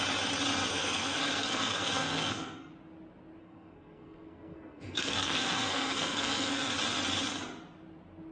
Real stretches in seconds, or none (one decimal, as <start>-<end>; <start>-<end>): 0.0-0.7; 2.7-3.4; 6.7-8.3